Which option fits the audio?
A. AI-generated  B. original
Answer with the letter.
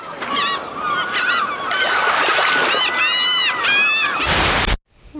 B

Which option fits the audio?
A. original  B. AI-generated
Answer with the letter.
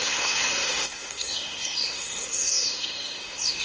B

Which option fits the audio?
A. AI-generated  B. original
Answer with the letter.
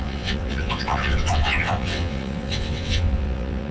A